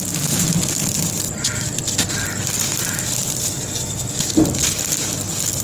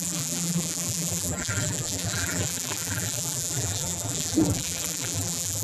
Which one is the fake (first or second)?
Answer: second